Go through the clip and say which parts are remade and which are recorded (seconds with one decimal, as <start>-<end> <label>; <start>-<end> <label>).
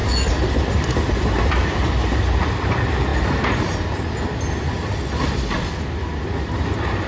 0.0-7.1 recorded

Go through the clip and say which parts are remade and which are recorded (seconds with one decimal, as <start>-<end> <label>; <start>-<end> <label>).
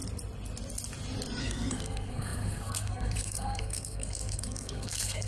0.0-1.4 recorded; 1.4-5.3 remade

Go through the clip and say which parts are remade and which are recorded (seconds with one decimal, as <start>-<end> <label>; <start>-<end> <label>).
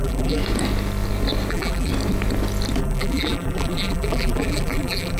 0.0-0.4 remade; 0.4-1.5 recorded; 1.5-1.9 remade; 1.9-2.8 recorded; 2.8-5.2 remade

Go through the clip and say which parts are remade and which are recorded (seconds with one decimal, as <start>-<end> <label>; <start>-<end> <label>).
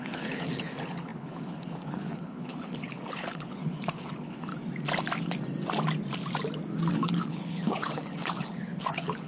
0.0-4.5 remade; 4.5-6.9 recorded; 6.9-9.3 remade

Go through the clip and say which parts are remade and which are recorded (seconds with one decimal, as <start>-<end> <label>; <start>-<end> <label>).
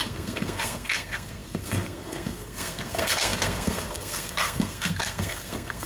0.0-5.9 remade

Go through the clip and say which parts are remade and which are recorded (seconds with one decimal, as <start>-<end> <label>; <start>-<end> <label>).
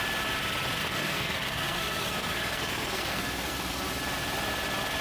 0.0-0.8 recorded; 0.8-3.8 remade; 3.8-5.0 recorded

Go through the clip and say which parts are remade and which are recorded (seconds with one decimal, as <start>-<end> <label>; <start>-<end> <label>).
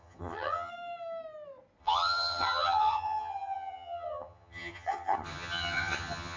0.0-0.7 remade; 0.7-1.8 recorded; 1.8-6.4 remade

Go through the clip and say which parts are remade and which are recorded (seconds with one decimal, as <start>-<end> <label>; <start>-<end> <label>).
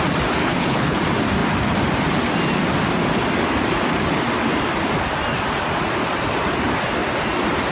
0.0-0.4 recorded; 0.4-1.0 remade; 1.0-7.7 recorded